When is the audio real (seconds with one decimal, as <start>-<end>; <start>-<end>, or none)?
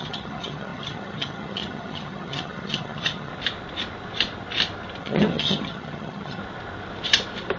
3.3-5.0; 6.4-7.6